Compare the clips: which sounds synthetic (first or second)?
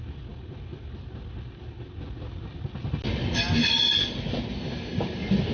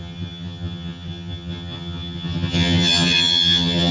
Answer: second